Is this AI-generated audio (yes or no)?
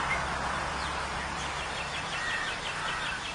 no